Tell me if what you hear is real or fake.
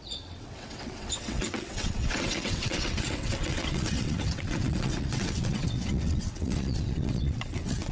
fake